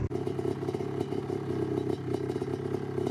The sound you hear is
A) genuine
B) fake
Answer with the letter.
A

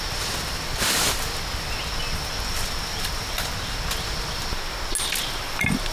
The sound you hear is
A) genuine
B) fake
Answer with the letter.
A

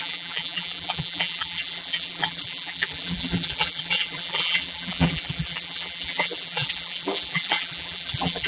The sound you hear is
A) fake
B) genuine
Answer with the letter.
A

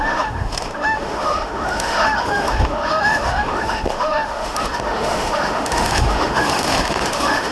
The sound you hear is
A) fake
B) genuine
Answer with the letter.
A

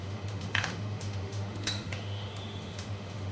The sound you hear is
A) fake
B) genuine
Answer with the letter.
A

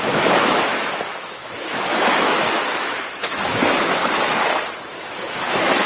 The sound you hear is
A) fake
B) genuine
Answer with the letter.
A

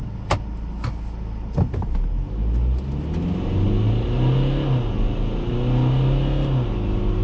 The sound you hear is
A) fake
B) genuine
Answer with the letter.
B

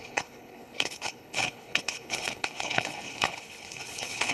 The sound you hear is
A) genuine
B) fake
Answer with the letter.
B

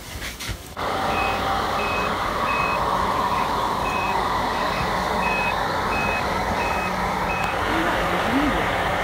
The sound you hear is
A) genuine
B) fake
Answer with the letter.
B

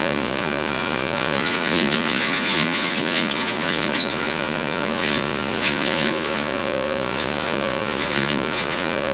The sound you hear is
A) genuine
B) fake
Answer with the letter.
B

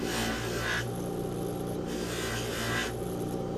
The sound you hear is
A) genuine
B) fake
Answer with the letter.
A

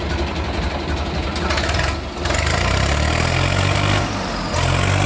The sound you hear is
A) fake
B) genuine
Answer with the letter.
B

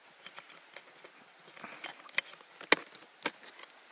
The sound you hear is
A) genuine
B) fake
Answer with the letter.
A